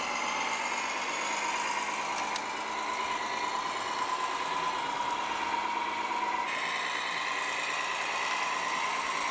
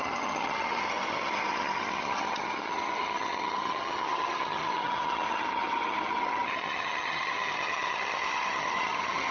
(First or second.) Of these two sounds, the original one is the first